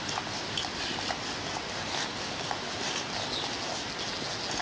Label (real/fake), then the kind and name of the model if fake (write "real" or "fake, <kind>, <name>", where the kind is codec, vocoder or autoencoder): real